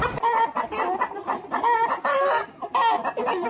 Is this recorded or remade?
recorded